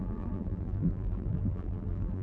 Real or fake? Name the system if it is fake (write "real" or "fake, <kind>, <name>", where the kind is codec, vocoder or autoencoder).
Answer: fake, vocoder, BigVGAN v2